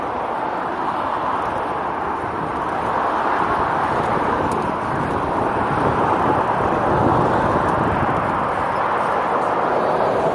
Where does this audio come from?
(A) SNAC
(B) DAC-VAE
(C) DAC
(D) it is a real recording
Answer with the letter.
D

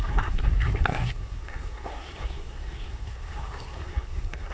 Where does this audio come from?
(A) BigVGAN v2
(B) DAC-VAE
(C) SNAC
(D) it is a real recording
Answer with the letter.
C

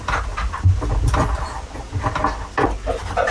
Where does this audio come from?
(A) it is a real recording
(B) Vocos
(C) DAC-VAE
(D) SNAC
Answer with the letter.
A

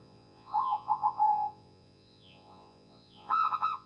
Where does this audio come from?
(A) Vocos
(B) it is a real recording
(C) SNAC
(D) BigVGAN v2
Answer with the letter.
A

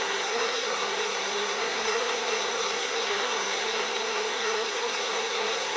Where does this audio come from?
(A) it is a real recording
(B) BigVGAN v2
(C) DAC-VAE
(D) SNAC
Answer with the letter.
D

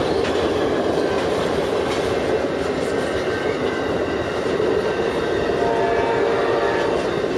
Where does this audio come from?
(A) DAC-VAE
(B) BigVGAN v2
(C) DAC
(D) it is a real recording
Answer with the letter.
D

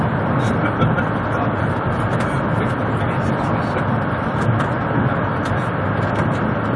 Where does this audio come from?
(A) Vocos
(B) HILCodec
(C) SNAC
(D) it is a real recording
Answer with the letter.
D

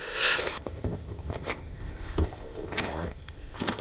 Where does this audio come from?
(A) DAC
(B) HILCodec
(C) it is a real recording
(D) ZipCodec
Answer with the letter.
D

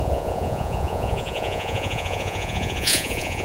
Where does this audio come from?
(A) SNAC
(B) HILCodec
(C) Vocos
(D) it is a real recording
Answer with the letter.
C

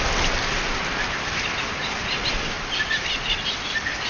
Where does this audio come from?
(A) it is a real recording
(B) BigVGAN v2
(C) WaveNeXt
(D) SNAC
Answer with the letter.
A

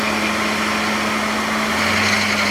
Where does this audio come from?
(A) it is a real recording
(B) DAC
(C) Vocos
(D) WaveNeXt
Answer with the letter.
A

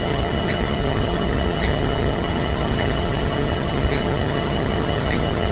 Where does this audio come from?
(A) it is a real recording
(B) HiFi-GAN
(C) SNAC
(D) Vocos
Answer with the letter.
B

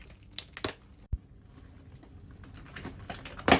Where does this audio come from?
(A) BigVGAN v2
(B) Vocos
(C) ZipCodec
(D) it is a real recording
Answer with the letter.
D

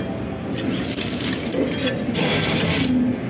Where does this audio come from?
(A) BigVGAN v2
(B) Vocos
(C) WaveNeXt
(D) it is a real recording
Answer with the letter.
D